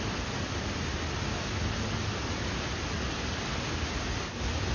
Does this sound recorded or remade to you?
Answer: recorded